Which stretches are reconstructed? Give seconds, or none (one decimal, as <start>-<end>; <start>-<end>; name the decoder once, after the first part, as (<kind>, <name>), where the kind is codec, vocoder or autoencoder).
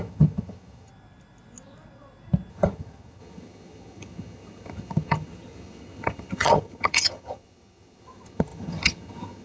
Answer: 0.0-0.9 (vocoder, HiFi-GAN); 2.5-9.4